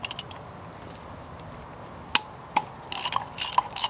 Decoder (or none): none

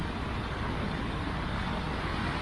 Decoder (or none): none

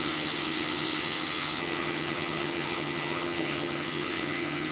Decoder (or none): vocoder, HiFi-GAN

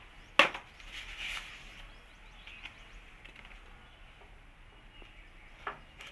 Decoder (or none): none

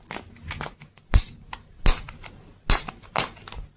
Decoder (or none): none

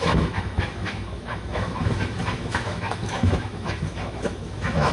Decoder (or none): autoencoder, DAC-VAE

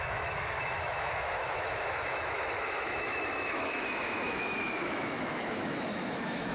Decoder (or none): autoencoder, DAC-VAE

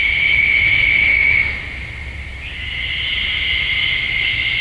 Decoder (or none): none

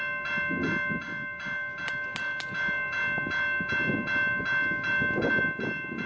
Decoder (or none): none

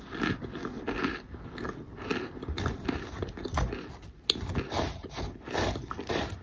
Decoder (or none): none